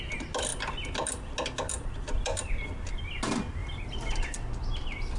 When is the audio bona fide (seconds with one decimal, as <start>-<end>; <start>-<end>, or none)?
0.0-3.6; 4.1-5.2